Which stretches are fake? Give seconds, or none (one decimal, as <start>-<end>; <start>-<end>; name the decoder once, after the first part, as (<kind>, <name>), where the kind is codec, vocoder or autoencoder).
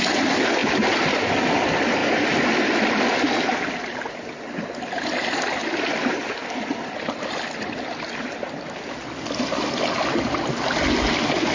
none